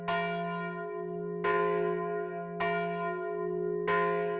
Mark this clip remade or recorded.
recorded